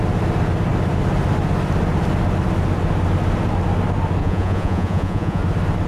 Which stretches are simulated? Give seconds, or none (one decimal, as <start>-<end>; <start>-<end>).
4.2-5.4